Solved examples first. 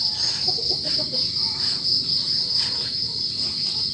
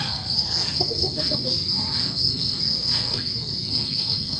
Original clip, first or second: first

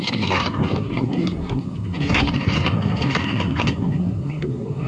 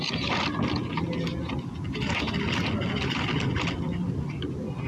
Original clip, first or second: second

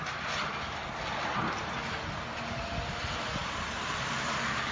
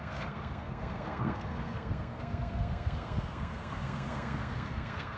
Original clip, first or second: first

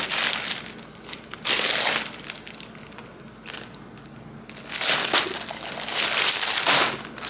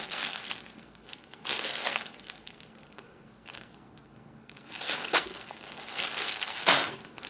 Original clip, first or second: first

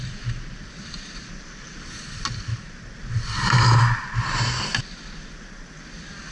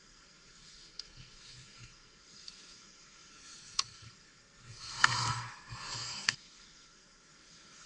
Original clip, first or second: first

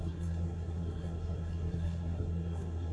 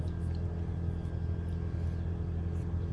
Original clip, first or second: second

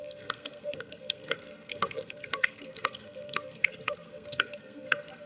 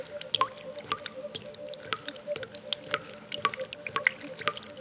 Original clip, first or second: second